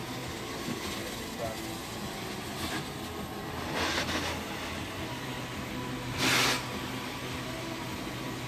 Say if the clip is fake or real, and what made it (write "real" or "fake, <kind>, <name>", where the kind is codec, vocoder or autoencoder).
real